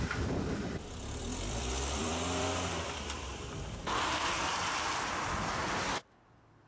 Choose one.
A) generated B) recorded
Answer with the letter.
A